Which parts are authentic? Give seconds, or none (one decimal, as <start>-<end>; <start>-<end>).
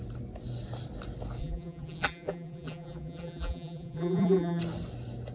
0.0-1.4; 4.6-5.3